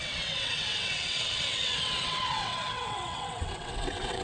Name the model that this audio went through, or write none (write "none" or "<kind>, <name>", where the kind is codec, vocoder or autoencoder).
vocoder, WaveNeXt